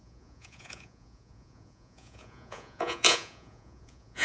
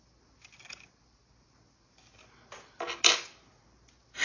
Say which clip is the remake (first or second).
first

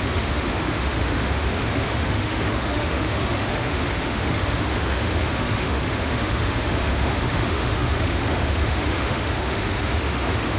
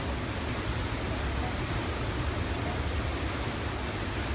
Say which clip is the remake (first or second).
first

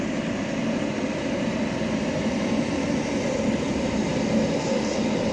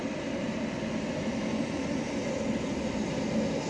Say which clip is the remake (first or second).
first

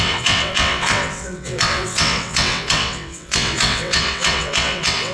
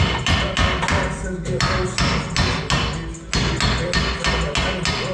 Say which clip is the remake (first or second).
first